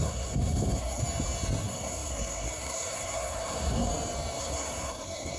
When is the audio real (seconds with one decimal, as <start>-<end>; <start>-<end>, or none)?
1.0-1.6; 3.9-4.4